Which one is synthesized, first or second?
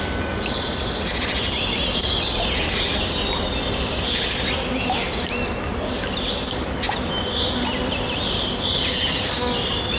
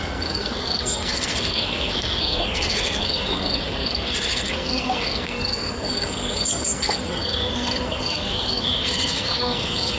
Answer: second